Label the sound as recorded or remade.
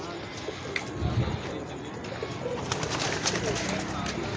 recorded